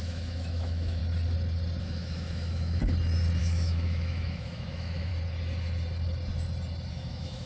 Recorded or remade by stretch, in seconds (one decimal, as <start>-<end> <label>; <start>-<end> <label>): 0.0-1.0 remade; 1.0-1.8 recorded; 1.8-2.8 remade; 2.8-3.4 recorded; 3.4-5.1 remade; 5.1-6.9 recorded; 6.9-7.5 remade